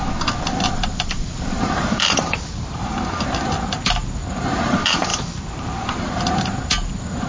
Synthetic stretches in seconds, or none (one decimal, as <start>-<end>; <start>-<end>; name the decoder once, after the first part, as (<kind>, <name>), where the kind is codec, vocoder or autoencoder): 1.1-2.9 (vocoder, BigVGAN v2); 4.4-7.3

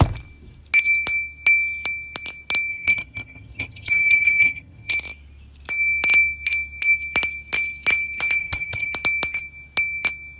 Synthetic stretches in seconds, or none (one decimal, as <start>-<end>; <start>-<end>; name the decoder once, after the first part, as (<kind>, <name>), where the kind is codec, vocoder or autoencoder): 2.7-4.9 (vocoder, HiFi-GAN); 8.4-8.9

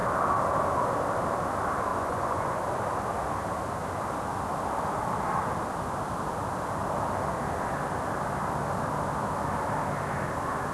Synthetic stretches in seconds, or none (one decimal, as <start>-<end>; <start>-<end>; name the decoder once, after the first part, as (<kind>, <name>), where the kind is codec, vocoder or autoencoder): 1.9-2.6 (vocoder, Vocos)

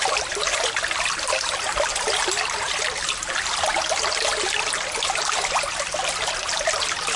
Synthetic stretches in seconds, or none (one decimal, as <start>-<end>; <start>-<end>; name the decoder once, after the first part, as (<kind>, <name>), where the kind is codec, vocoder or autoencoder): none

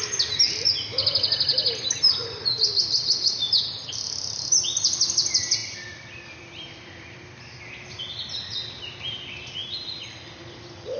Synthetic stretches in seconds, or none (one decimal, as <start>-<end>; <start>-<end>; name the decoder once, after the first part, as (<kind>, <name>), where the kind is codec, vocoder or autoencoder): 5.6-7.6 (vocoder, BigVGAN v2); 9.6-10.2

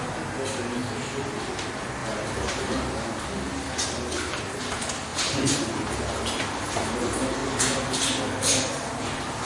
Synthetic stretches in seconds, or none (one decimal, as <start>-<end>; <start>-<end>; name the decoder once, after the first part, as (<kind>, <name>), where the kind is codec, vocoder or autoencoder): 2.0-2.6 (vocoder, BigVGAN v2); 5.1-6.6